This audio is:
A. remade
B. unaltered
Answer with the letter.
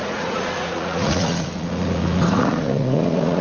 A